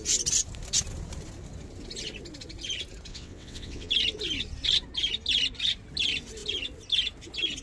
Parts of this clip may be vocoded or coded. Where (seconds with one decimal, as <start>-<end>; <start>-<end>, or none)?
3.1-3.9